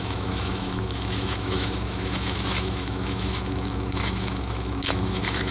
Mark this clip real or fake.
fake